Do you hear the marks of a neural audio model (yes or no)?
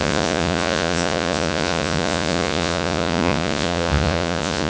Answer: yes